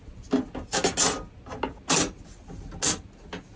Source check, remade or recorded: recorded